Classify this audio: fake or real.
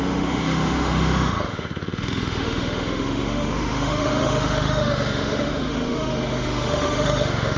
fake